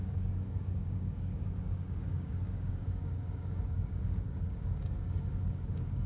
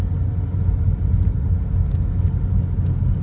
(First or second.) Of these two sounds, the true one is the second